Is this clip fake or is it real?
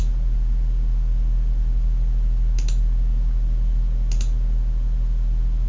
real